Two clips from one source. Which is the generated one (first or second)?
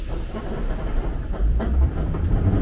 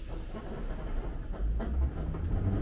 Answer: first